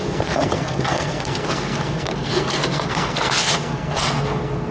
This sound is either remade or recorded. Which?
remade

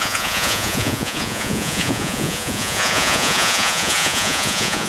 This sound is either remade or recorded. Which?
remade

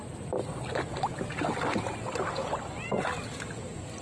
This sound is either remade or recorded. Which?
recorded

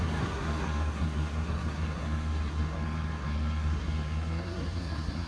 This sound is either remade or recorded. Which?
remade